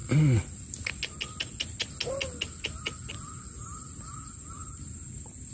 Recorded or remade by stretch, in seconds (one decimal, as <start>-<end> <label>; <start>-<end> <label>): 0.0-5.5 recorded